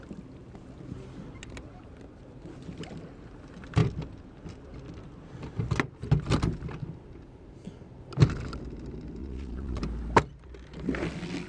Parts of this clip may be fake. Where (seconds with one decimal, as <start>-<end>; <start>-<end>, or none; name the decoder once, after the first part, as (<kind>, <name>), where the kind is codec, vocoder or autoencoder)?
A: 9.2-9.8 (vocoder, Vocos)